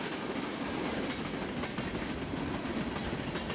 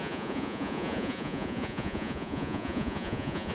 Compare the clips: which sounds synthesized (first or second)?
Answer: second